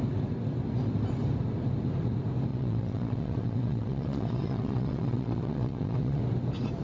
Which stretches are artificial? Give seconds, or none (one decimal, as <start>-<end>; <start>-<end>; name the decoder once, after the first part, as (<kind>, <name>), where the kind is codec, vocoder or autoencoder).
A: 2.5-6.2 (vocoder, WaveNeXt)